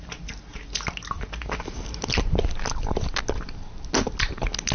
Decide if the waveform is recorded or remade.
recorded